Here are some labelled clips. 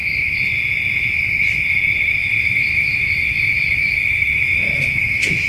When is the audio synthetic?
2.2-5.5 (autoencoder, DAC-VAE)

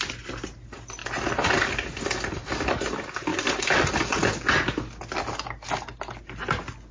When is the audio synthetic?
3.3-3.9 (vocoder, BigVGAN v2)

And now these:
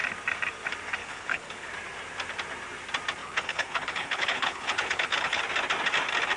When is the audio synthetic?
1.0-1.7 (codec, HILCodec); 3.2-5.4